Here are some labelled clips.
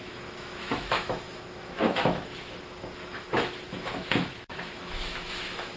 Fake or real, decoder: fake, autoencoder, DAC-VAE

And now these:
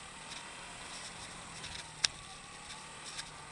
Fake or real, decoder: real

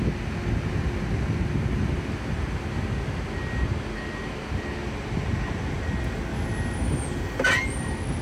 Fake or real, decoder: real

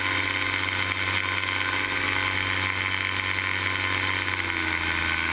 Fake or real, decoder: real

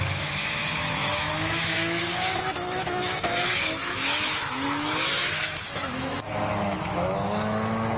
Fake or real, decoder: fake, autoencoder, DAC-VAE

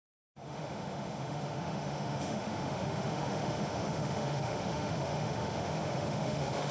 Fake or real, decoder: fake, autoencoder, DAC-VAE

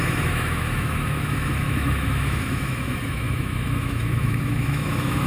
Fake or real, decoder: fake, autoencoder, DAC-VAE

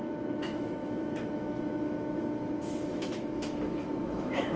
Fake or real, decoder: fake, autoencoder, DAC-VAE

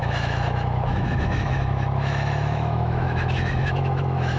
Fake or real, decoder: fake, autoencoder, DAC-VAE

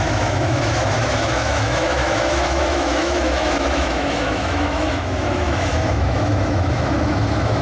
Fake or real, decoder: fake, autoencoder, DAC-VAE